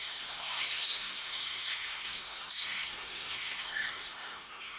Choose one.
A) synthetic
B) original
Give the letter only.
A